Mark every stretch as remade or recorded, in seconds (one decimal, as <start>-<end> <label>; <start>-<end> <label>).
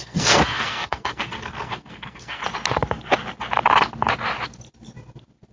0.0-2.4 remade; 2.4-5.5 recorded